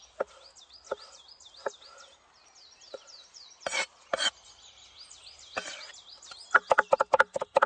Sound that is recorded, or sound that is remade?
recorded